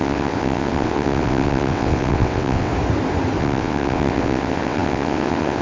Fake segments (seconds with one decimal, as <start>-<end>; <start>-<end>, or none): 0.0-2.7; 3.4-5.6